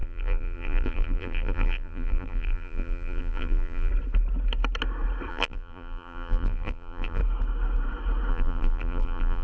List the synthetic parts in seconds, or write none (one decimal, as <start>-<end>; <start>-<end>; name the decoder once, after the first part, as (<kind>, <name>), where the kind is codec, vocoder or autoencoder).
0.0-3.9 (vocoder, BigVGAN v2); 5.3-7.2; 8.3-9.4